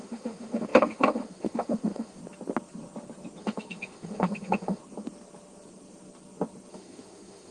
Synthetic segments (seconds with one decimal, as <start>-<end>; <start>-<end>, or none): 0.0-2.2; 3.4-4.8; 6.7-7.5